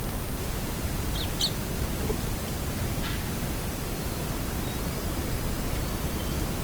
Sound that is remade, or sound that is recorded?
recorded